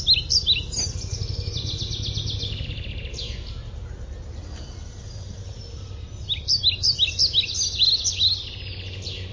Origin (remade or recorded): recorded